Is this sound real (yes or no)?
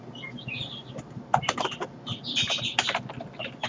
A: yes